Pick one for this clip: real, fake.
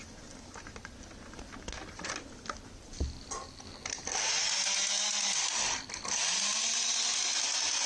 real